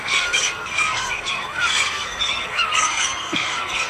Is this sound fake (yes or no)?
yes